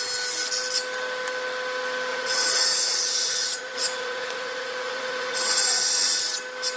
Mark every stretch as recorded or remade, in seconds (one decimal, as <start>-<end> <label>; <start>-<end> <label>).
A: 0.0-2.1 recorded; 2.1-6.2 remade; 6.2-6.8 recorded